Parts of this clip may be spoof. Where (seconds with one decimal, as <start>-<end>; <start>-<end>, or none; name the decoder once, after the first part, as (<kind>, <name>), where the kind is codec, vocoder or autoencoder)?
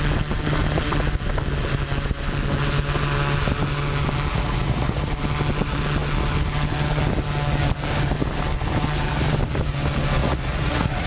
4.3-5.1 (vocoder, Vocos); 10.2-11.1